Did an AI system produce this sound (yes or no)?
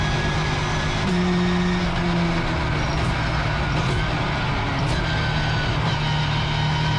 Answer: no